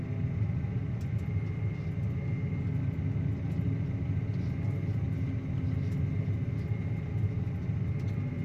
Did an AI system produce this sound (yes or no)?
no